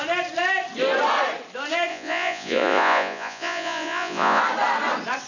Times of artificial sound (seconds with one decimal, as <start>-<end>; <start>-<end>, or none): 1.9-4.4